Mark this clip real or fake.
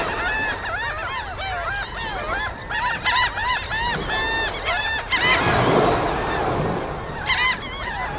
real